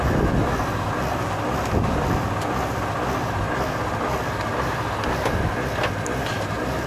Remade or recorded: recorded